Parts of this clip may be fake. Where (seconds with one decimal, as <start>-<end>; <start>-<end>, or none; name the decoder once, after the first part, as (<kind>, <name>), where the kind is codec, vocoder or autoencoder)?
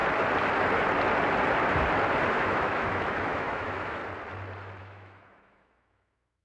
2.3-4.0 (autoencoder, DAC-VAE); 4.8-6.4